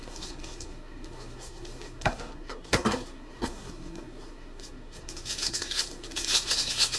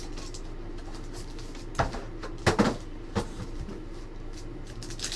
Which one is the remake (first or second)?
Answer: first